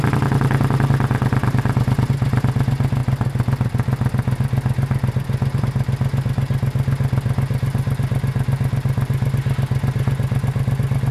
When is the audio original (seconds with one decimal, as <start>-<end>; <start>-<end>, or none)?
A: 0.0-11.1